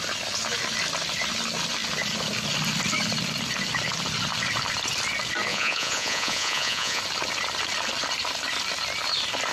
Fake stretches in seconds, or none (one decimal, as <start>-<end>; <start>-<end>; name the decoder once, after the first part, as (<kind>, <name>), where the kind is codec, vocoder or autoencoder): 5.5-7.0 (vocoder, Vocos)